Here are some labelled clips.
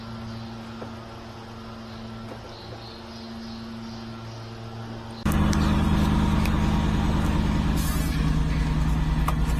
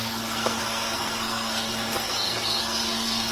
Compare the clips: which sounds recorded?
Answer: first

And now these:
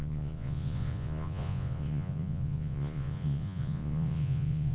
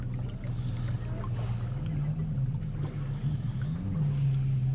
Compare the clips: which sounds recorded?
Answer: second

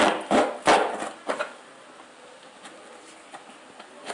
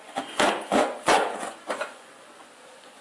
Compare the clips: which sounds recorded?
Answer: first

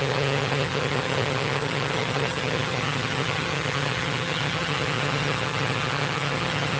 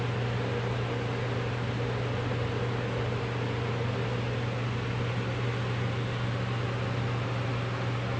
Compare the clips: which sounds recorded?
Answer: second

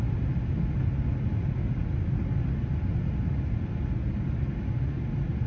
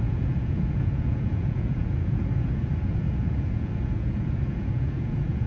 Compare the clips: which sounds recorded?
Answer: first